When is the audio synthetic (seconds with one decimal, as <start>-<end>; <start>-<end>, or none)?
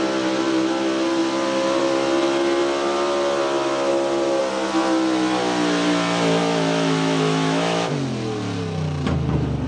6.4-7.9